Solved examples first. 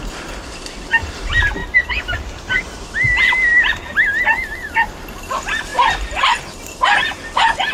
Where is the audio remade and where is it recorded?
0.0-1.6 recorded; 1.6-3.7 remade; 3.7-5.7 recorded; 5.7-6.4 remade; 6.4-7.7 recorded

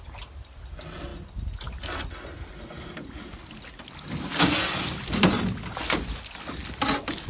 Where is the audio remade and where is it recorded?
0.0-7.3 recorded

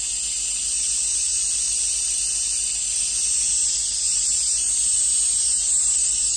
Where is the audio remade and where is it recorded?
0.0-6.4 recorded

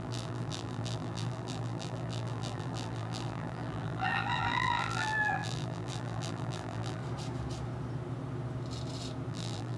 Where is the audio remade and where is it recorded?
0.0-7.0 remade; 7.0-9.3 recorded; 9.3-9.8 remade